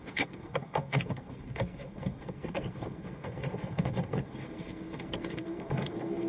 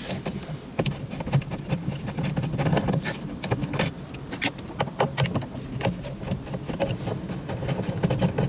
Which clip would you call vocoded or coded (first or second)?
first